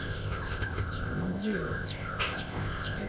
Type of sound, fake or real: fake